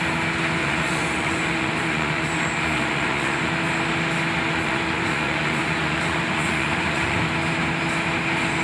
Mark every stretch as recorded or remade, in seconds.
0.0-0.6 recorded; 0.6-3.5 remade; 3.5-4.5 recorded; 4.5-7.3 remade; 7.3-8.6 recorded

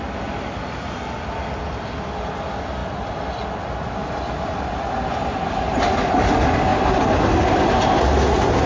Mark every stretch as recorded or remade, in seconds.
0.0-8.7 recorded